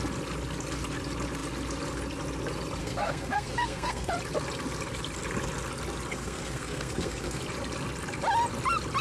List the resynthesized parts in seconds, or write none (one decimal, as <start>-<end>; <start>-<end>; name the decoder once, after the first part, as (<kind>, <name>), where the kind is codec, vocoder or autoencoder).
2.8-4.1 (codec, SNAC); 6.1-7.4